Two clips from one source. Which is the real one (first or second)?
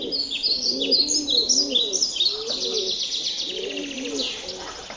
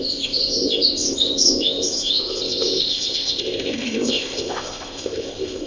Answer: first